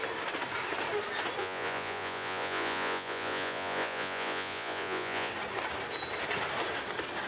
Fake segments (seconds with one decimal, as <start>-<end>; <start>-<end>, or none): 1.4-5.3